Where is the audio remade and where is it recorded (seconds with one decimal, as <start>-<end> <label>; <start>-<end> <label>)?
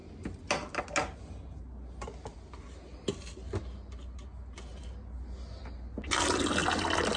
0.0-7.2 recorded